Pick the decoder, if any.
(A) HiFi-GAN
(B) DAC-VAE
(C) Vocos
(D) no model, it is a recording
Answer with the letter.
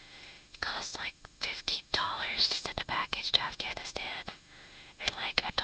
B